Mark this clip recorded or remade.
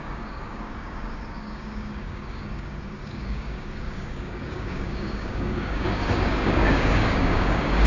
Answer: remade